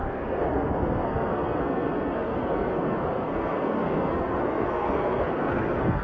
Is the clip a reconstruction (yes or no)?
yes